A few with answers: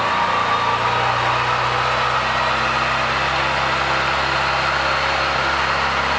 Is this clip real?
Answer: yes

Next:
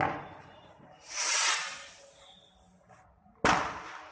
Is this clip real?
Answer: yes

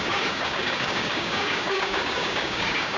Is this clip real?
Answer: no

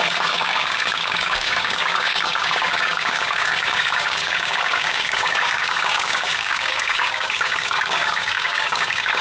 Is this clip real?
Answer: no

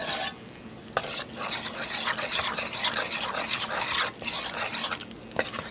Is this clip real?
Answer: yes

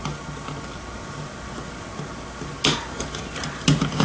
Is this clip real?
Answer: yes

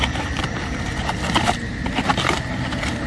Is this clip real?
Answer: yes